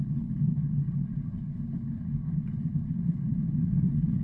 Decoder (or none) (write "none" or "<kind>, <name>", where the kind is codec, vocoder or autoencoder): codec, HILCodec